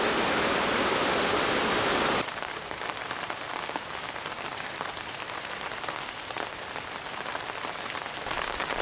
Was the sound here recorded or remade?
remade